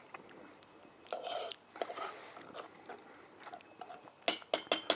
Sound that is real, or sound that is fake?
real